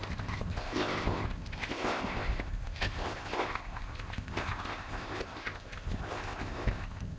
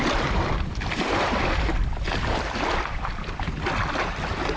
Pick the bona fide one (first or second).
second